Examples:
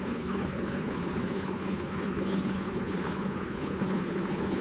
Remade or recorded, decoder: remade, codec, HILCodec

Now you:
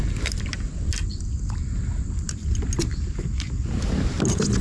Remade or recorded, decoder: recorded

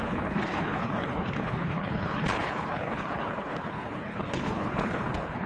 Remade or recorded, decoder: remade, codec, HILCodec